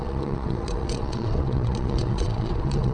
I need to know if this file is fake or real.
fake